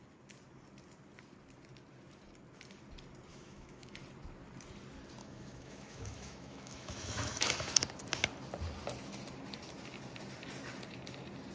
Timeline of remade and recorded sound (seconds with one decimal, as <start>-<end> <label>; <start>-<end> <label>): 0.0-3.3 recorded; 3.3-3.9 remade; 3.9-5.2 recorded; 5.2-7.7 remade; 7.7-11.5 recorded